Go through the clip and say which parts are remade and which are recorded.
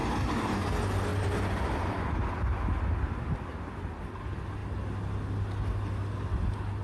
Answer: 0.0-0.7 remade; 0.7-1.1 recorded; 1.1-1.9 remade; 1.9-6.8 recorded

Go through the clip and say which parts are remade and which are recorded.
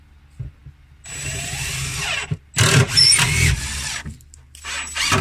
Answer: 0.0-5.2 recorded